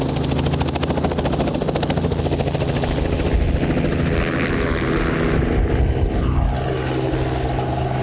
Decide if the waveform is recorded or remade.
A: recorded